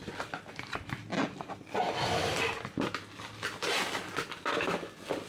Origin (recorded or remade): recorded